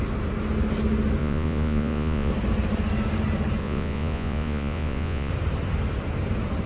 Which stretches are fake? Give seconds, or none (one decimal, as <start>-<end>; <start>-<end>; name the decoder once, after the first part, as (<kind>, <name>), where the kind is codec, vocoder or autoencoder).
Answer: 1.2-2.3 (vocoder, Vocos); 3.6-5.3

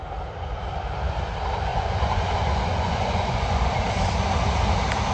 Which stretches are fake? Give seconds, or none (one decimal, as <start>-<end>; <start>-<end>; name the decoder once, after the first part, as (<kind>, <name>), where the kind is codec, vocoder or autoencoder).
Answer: 1.7-3.8 (vocoder, Vocos)

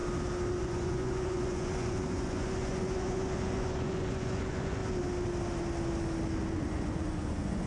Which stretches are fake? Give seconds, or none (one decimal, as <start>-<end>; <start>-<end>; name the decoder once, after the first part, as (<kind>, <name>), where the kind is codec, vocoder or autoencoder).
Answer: 0.6-4.8 (vocoder, Vocos); 6.5-7.7

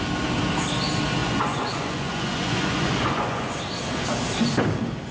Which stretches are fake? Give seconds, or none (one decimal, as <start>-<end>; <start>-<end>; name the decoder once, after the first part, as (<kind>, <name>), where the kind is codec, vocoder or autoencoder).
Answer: 1.2-3.6 (vocoder, Vocos)

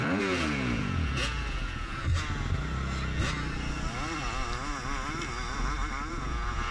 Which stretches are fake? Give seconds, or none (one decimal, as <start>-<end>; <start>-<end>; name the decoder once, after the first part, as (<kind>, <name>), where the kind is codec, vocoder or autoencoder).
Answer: 0.0-2.1 (vocoder, Vocos); 6.1-6.7

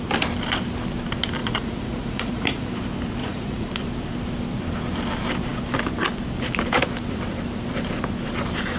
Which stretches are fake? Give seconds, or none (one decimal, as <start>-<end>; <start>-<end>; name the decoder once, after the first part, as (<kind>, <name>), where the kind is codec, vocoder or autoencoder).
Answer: 1.4-2.7 (vocoder, Vocos); 3.2-3.7

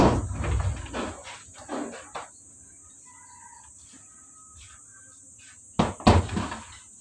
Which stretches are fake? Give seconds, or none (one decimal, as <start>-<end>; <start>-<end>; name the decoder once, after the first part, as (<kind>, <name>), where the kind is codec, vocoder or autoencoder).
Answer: none

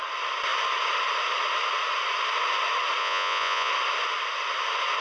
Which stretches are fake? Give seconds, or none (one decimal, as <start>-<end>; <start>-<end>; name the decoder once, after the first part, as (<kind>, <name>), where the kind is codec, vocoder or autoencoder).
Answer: 3.0-3.7 (vocoder, Vocos)